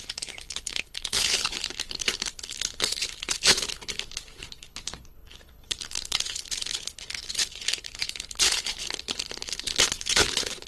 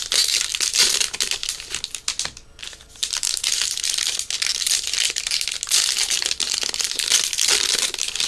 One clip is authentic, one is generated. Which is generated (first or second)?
first